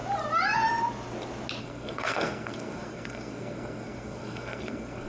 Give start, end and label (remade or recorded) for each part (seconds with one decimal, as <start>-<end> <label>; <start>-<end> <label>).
0.0-1.6 recorded; 1.6-5.1 remade